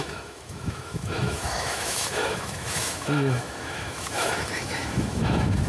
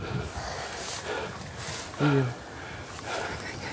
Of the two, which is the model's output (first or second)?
first